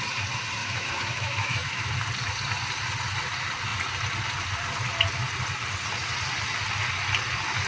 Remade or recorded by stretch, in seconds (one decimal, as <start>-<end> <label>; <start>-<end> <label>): 0.0-0.6 recorded; 0.6-1.9 remade; 1.9-7.7 recorded